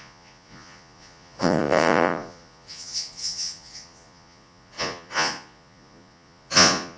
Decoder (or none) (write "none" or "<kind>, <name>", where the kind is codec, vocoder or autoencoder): vocoder, Vocos